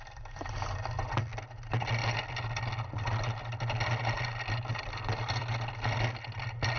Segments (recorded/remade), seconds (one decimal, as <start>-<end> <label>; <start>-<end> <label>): 0.0-2.0 remade; 2.0-4.7 recorded; 4.7-5.4 remade; 5.4-6.8 recorded